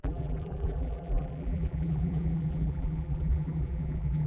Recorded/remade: remade